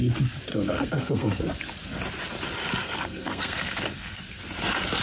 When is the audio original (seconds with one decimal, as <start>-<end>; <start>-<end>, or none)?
0.0-0.5; 1.4-2.8; 4.2-5.0